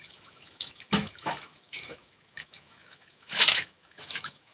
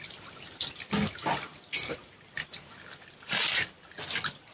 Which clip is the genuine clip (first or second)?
second